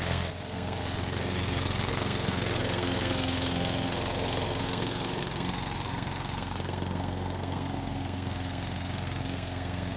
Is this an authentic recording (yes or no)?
no